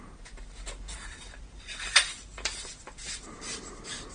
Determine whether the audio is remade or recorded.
remade